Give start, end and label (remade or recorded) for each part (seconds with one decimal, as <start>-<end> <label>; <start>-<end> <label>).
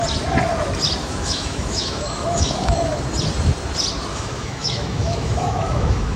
0.0-1.0 recorded; 1.0-3.0 remade; 3.0-4.1 recorded; 4.1-6.2 remade